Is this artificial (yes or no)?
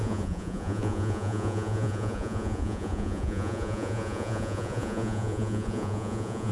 yes